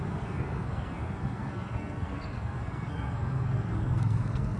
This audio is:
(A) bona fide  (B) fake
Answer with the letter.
B